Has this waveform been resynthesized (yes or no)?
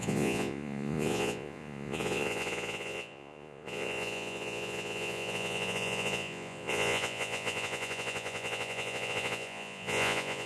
yes